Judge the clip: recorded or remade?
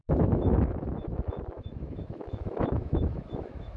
remade